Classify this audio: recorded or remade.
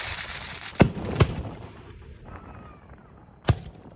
remade